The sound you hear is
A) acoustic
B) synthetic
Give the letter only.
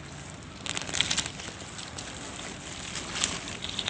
A